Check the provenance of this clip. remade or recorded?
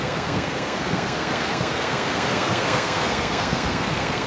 remade